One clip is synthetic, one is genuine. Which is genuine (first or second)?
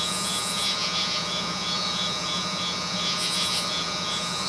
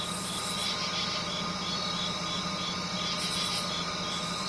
second